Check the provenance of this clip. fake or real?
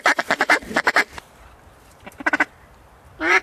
fake